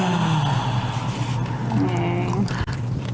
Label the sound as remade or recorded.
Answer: recorded